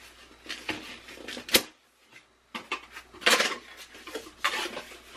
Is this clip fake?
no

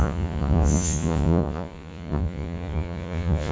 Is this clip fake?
yes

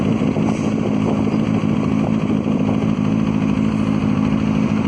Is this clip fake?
no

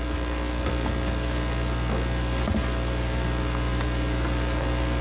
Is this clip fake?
no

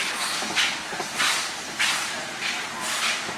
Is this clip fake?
no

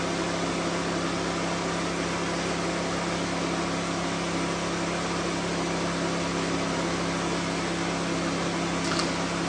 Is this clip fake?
no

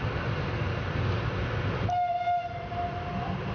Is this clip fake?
no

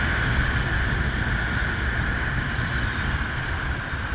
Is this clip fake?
no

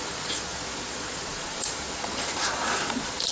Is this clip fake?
yes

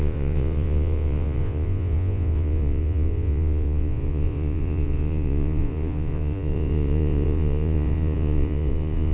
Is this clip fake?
yes